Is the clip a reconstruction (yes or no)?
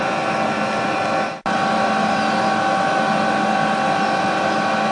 no